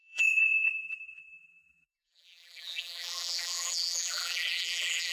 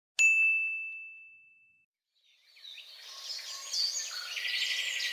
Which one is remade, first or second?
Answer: first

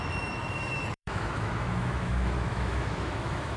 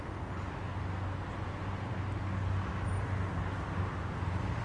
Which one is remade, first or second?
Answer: first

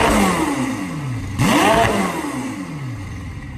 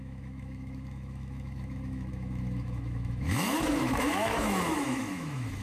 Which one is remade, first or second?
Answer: second